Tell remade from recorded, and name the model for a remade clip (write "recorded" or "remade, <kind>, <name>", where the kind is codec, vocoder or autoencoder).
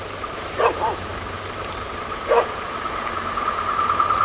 remade, vocoder, BigVGAN v2